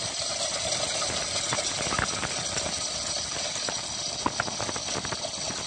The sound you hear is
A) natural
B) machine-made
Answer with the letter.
A